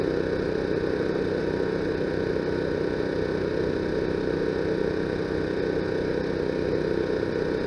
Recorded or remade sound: recorded